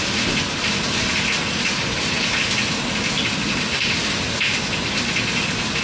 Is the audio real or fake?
real